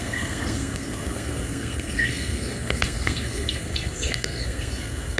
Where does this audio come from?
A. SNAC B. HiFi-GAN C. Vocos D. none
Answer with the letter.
A